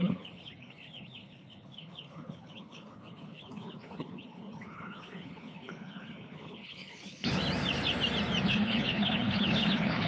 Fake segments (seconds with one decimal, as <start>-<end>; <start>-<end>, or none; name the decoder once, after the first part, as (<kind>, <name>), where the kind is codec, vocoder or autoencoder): 0.0-7.4 (codec, HILCodec); 8.4-10.1